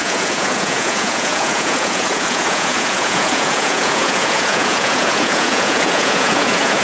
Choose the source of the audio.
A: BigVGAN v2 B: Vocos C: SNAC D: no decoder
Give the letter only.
B